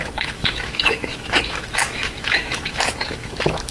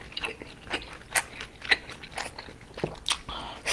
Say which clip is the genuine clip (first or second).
second